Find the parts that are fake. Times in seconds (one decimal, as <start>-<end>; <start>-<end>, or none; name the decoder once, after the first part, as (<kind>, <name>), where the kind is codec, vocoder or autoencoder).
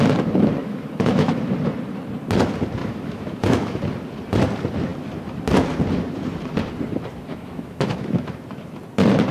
0.6-1.4 (autoencoder, DAC-VAE); 2.8-3.8; 7.3-8.4